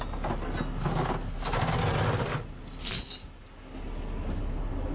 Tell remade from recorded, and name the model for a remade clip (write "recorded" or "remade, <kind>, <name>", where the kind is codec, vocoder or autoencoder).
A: recorded